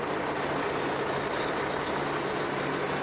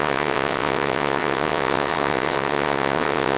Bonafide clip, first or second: first